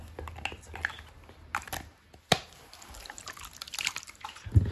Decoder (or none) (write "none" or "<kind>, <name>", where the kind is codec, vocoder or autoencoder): none